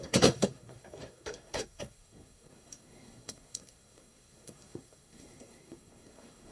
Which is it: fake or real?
fake